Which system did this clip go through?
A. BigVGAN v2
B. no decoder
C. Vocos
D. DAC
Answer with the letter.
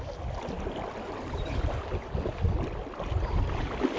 B